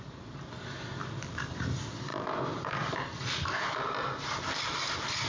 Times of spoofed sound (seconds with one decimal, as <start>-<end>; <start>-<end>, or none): 0.0-2.1; 2.7-5.3